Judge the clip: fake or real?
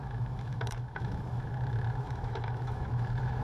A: fake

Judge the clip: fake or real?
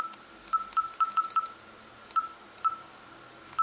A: real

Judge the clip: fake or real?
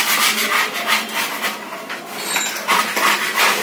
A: real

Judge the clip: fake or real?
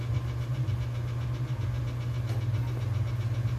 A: real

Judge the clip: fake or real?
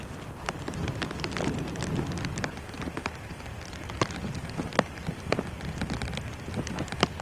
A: real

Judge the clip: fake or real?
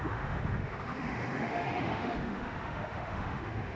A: fake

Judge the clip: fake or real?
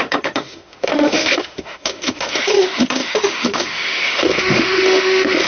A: fake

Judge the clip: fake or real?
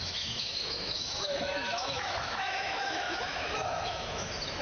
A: fake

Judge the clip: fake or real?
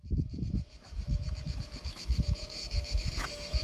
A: fake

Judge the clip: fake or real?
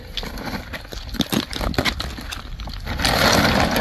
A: real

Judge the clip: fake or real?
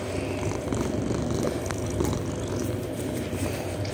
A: real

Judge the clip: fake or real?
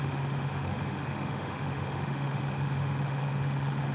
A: fake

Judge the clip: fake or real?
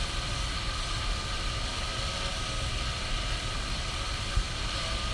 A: real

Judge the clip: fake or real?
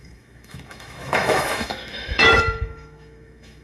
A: fake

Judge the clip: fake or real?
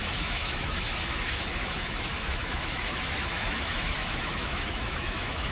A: fake